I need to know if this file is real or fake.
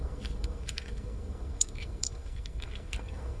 fake